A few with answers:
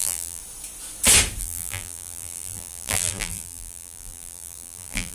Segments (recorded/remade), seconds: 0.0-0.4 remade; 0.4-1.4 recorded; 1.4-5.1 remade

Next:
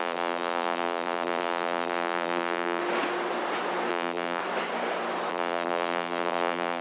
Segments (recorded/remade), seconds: 0.0-2.8 remade; 2.8-3.9 recorded; 3.9-4.4 remade; 4.4-5.3 recorded; 5.3-6.8 remade